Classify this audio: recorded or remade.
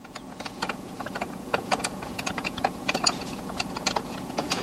remade